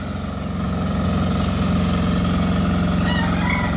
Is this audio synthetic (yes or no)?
no